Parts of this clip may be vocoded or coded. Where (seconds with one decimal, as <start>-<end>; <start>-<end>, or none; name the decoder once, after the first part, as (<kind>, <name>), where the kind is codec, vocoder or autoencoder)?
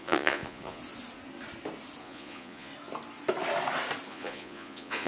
0.0-0.8 (vocoder, Vocos); 2.0-2.7; 4.1-5.1